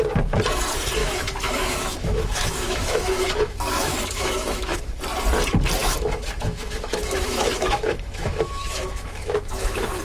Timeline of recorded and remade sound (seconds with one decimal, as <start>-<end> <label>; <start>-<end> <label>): 0.0-1.0 recorded; 1.0-5.0 remade; 5.0-5.8 recorded; 5.8-10.0 remade